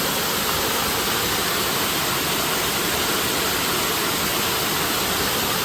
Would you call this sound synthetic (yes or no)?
no